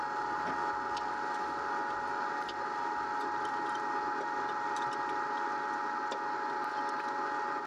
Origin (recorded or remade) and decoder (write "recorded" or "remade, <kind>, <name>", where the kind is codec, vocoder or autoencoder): recorded